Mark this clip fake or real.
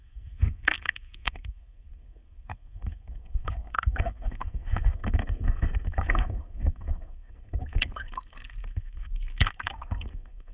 fake